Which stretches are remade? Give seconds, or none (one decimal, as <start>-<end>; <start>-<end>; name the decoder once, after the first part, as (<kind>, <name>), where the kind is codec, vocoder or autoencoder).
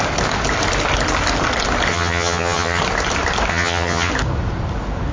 1.9-2.8 (vocoder, HiFi-GAN); 3.5-4.1